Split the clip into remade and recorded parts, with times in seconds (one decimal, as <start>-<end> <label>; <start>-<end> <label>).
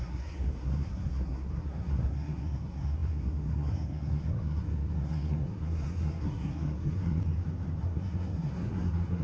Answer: 0.0-7.2 remade; 7.2-7.8 recorded; 7.8-9.2 remade